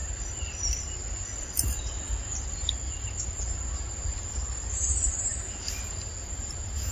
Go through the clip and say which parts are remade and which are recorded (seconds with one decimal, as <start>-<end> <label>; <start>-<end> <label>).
0.0-6.9 remade